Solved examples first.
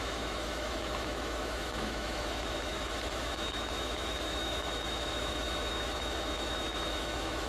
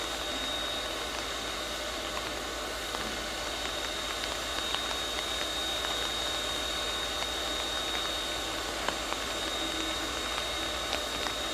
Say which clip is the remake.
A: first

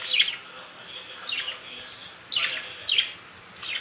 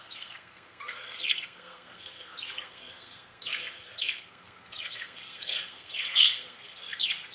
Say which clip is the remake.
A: second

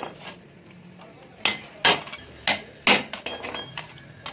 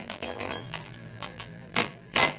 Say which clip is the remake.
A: second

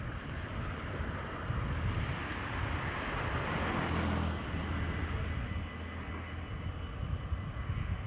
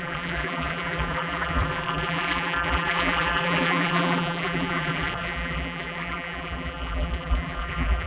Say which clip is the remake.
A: second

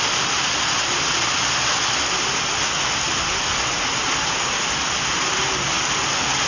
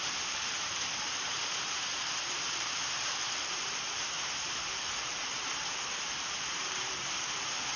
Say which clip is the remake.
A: second